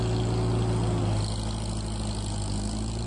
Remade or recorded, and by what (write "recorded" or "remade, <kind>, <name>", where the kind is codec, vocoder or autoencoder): recorded